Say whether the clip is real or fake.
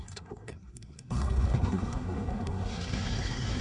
fake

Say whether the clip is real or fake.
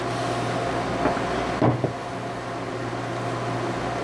real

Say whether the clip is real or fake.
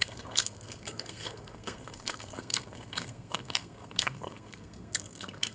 fake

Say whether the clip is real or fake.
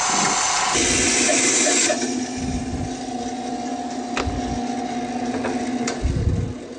real